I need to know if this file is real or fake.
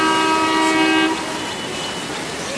real